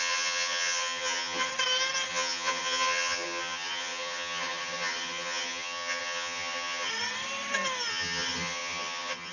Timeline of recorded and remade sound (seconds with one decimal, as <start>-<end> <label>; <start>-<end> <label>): 0.0-1.5 remade; 1.5-2.1 recorded; 2.1-6.9 remade; 6.9-7.9 recorded; 7.9-9.3 remade